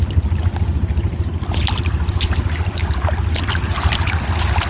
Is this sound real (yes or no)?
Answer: yes